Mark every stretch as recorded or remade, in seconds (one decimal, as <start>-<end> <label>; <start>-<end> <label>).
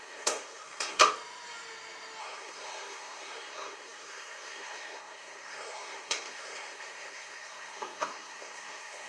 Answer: 0.0-1.0 remade; 1.0-2.2 recorded; 2.2-9.1 remade